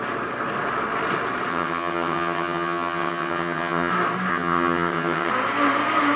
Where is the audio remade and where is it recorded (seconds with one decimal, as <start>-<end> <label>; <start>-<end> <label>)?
0.0-1.5 recorded; 1.5-3.9 remade; 3.9-4.3 recorded; 4.3-5.3 remade; 5.3-6.2 recorded